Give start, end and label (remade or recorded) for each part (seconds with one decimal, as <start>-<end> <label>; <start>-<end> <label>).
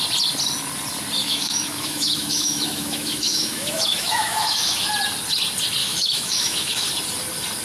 0.0-1.2 recorded; 1.2-4.9 remade; 4.9-5.8 recorded; 5.8-6.9 remade; 6.9-7.6 recorded